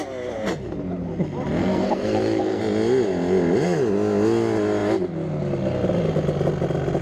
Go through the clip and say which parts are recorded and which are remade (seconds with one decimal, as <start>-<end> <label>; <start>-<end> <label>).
0.0-1.6 recorded; 1.6-2.6 remade; 2.6-7.0 recorded

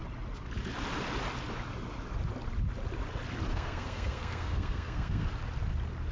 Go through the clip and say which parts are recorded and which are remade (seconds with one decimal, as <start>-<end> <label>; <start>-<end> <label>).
0.0-3.5 recorded; 3.5-5.3 remade; 5.3-6.1 recorded

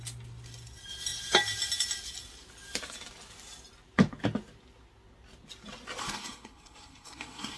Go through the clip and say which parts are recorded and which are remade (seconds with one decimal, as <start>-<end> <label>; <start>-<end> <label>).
0.0-6.0 recorded; 6.0-7.6 remade

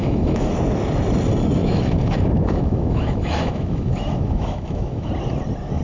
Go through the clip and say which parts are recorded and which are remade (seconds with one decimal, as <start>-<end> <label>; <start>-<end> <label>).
0.0-0.5 remade; 0.5-1.6 recorded; 1.6-5.1 remade; 5.1-5.8 recorded

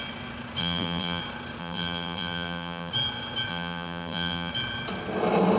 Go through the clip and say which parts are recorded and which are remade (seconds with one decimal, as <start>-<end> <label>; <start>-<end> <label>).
0.0-0.6 recorded; 0.6-1.2 remade; 1.2-1.6 recorded; 1.6-2.9 remade; 2.9-3.5 recorded; 3.5-4.5 remade; 4.5-5.6 recorded